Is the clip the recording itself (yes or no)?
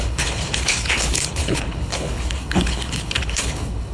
no